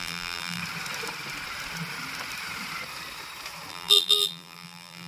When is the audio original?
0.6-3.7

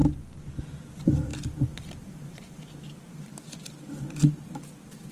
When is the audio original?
0.0-0.6; 1.3-4.4

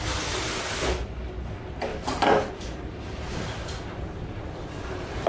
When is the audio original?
0.0-1.9

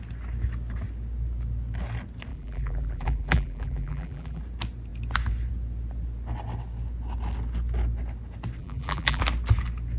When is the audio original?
0.0-2.3; 4.4-8.6; 9.2-10.0

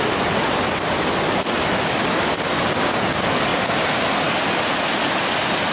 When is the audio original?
0.0-5.7

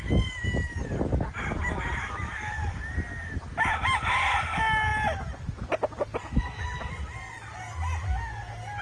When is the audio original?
0.0-8.8